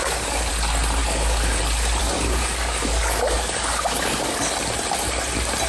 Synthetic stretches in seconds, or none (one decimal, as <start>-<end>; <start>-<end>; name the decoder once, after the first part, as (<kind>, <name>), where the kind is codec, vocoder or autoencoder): 0.0-0.5 (codec, DAC); 1.0-1.6; 2.0-4.5